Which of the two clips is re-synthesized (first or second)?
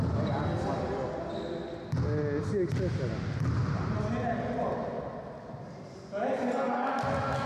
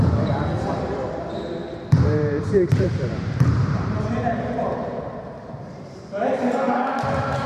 second